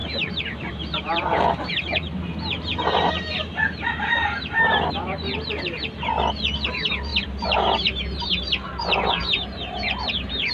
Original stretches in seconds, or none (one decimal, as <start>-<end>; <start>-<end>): 4.9-7.1